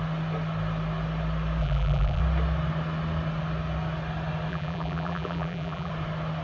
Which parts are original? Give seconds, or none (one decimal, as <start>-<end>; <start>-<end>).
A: 0.0-1.6; 2.2-4.5; 5.9-6.4